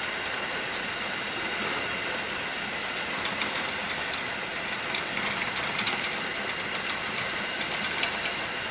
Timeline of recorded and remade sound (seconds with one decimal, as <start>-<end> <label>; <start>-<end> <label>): 0.0-8.7 recorded